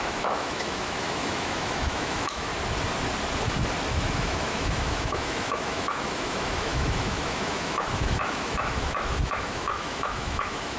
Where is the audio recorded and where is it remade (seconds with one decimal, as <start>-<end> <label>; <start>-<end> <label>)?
0.0-2.5 remade; 2.5-3.9 recorded; 3.9-10.8 remade